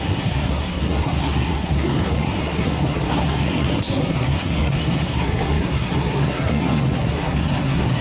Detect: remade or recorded remade